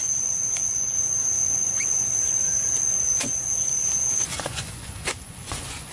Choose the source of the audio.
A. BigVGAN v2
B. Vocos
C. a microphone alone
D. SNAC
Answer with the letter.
B